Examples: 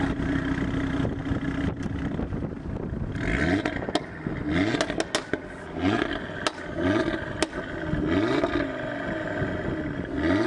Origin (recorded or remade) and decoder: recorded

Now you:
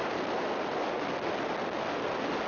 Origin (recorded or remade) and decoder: recorded